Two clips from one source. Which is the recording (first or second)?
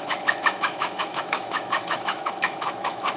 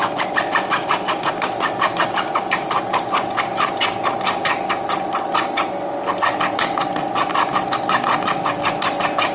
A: second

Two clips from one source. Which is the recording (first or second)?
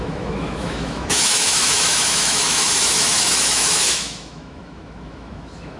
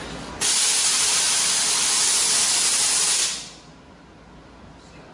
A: second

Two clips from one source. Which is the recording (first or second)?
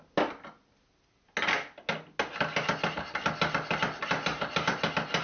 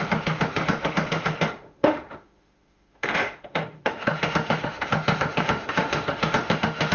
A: first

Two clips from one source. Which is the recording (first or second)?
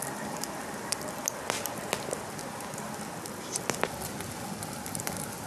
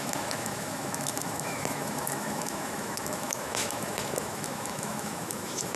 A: first